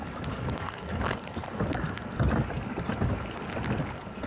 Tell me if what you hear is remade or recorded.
recorded